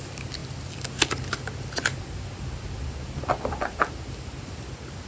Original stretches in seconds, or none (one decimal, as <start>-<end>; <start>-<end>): 0.0-5.1